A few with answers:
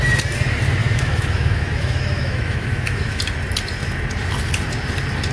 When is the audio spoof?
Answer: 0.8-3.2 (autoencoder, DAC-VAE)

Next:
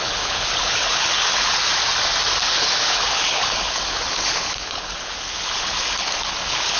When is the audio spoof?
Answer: 0.0-1.7 (codec, HILCodec); 2.4-6.8